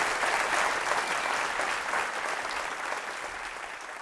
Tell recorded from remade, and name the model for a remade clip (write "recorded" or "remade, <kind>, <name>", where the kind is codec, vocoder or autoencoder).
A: recorded